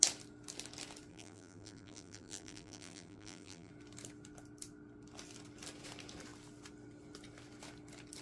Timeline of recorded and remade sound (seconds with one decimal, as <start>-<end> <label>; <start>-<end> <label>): 0.0-1.1 recorded; 1.1-3.7 remade; 3.7-8.2 recorded